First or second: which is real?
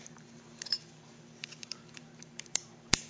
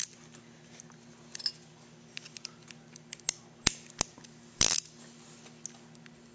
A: second